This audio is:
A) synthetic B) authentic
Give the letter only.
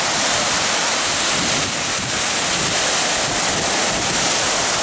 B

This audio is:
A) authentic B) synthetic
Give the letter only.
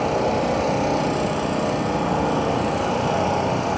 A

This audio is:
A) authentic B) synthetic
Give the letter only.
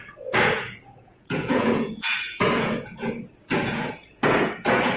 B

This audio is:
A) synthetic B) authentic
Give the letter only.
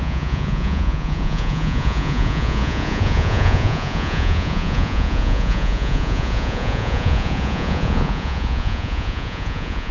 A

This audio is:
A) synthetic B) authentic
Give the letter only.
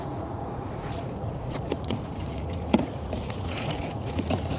A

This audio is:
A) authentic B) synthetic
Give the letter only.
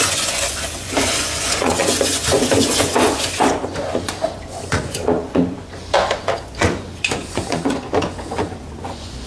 B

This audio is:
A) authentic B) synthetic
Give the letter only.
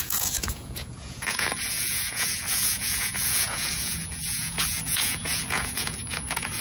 B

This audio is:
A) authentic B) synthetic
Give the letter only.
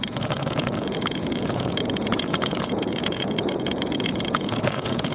B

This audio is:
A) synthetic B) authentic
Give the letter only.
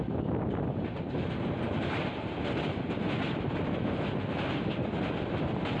B